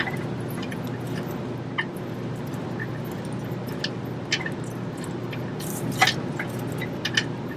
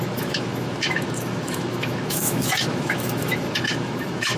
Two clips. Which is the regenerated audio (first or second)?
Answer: second